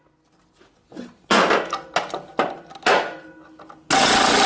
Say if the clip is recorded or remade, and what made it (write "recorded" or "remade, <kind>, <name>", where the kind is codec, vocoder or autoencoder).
recorded